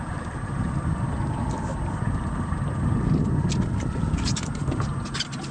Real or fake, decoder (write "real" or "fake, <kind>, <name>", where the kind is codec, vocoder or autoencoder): real